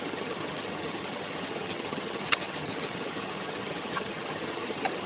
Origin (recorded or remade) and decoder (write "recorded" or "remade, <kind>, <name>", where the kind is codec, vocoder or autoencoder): remade, vocoder, HiFi-GAN